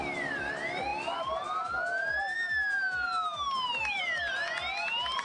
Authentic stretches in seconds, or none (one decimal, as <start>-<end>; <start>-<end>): 0.0-5.2